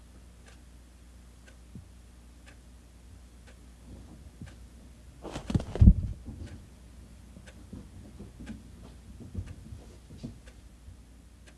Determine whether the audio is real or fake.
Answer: real